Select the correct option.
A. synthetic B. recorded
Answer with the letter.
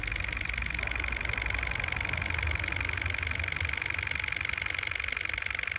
B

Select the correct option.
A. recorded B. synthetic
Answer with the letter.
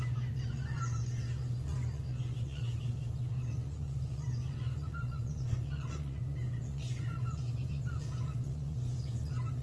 B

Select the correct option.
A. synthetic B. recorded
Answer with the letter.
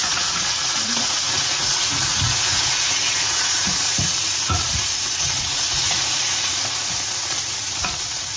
A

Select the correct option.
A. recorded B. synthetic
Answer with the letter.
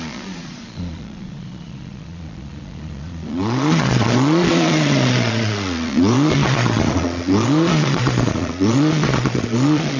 B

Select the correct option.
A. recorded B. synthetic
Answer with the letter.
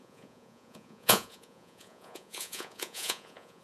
B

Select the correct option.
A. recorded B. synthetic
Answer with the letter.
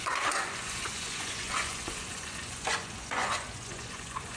B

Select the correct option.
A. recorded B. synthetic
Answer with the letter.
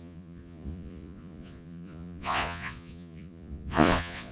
B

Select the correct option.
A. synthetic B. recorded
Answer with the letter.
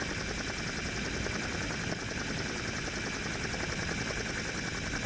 B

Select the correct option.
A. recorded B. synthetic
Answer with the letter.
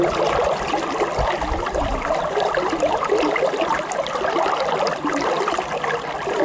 A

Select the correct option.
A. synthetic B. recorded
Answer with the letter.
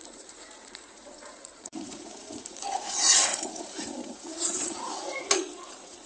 A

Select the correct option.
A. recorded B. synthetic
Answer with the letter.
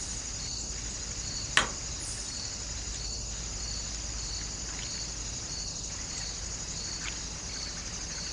A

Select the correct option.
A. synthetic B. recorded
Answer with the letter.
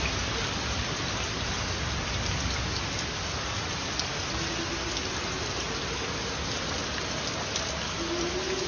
B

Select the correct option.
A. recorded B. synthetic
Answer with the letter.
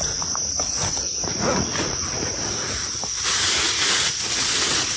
B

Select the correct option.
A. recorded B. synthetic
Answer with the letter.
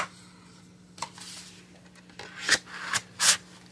A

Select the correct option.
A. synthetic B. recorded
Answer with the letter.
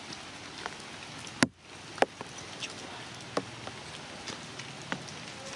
B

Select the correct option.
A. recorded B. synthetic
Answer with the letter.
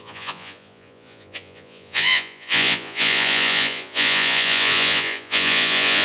B